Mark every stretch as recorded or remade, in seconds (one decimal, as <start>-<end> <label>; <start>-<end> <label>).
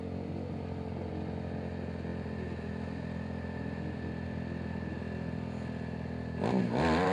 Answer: 0.0-7.1 recorded